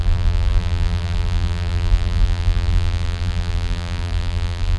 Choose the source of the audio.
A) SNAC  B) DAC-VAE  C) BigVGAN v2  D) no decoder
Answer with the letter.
C